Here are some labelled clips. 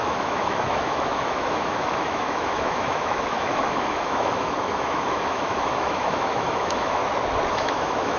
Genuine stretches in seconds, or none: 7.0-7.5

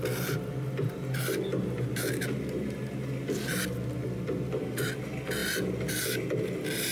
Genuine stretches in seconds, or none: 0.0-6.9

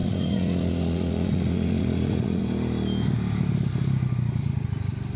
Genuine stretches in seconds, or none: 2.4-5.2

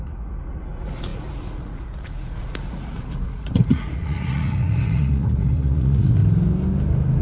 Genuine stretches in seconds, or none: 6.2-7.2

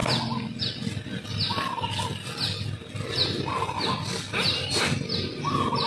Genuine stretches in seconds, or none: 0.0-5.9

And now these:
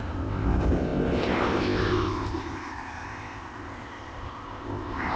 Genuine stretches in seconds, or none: none